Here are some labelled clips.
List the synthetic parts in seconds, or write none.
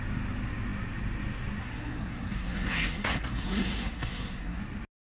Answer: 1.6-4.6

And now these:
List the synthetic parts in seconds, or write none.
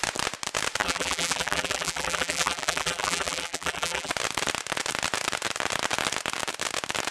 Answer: 0.8-4.1